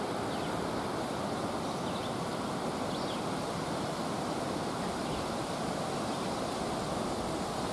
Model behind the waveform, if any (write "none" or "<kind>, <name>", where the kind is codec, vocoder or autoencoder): none